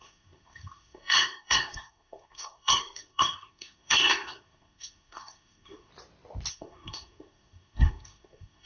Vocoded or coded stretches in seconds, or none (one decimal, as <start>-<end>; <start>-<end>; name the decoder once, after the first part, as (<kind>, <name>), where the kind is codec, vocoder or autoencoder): 0.0-5.9 (codec, SNAC); 6.5-8.7